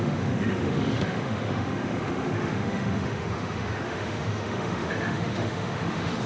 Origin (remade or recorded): remade